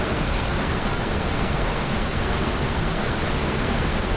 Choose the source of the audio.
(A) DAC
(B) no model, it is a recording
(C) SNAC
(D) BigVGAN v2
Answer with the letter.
C